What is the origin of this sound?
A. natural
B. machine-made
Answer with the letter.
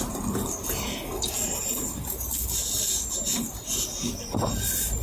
A